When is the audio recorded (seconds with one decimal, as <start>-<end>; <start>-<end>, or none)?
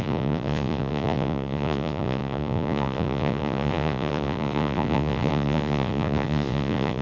none